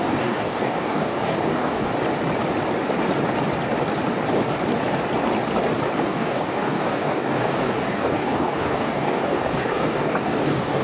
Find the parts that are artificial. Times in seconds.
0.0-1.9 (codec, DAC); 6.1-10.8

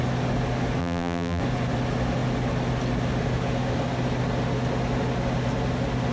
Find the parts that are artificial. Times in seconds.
0.8-1.4 (vocoder, BigVGAN v2)

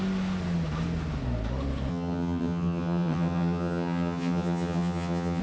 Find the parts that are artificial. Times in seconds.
1.9-5.4 (vocoder, HiFi-GAN)